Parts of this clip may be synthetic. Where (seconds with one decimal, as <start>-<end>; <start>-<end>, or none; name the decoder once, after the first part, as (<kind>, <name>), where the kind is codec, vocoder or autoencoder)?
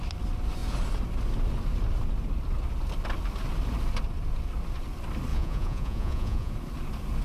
5.3-6.5 (vocoder, Vocos)